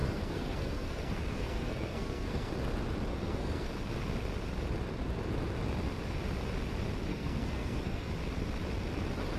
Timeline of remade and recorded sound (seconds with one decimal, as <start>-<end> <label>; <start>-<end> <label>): 0.0-2.5 remade; 2.5-3.1 recorded; 3.1-3.7 remade; 3.7-7.1 recorded; 7.1-8.1 remade; 8.1-9.4 recorded